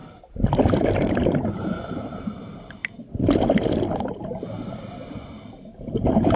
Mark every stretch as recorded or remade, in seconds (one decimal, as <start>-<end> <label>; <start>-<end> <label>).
0.0-2.8 remade; 2.8-4.1 recorded; 4.1-6.4 remade